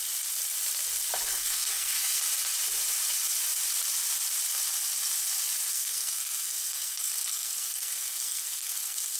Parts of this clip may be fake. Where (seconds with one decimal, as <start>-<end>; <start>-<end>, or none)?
1.3-2.2; 5.7-9.2